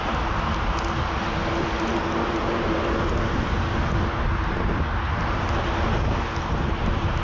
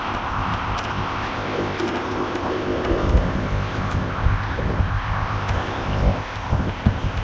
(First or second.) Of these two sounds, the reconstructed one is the second